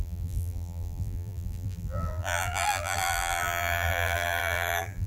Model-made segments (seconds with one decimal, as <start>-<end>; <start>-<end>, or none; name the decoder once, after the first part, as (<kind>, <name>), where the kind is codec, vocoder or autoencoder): 0.0-5.1 (vocoder, BigVGAN v2)

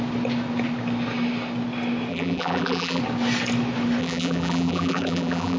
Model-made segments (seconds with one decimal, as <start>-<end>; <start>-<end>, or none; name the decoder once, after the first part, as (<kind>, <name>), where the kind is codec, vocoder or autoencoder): 2.1-3.0 (vocoder, BigVGAN v2); 4.0-5.6

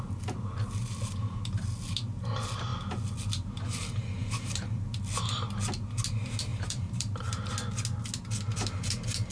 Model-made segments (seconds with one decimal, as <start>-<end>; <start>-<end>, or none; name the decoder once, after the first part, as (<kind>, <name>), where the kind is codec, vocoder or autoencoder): 4.2-4.9 (vocoder, BigVGAN v2); 6.5-7.5